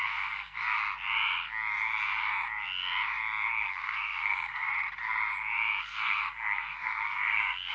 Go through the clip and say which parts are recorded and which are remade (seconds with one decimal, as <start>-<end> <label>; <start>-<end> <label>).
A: 0.0-0.8 remade; 0.8-3.6 recorded; 3.6-4.7 remade; 4.7-5.8 recorded; 5.8-7.7 remade